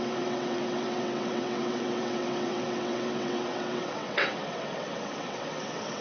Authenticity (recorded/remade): remade